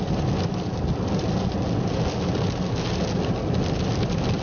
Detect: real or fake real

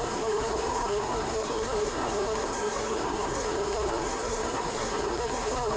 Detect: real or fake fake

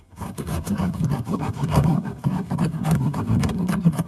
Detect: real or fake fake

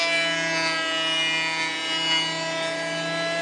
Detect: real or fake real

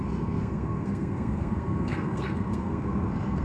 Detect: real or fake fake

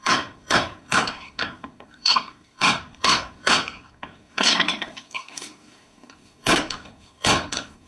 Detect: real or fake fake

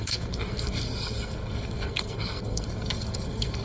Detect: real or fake fake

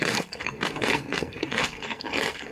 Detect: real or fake fake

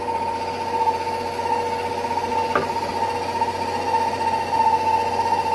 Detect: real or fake real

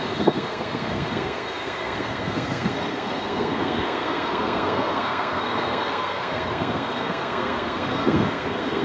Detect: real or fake fake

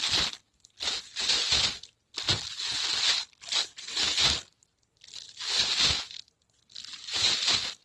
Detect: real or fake real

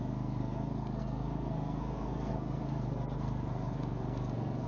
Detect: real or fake fake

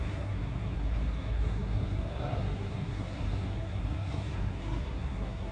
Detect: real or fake fake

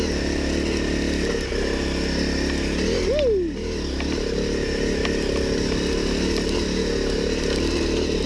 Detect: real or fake real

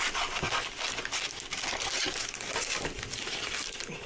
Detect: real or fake real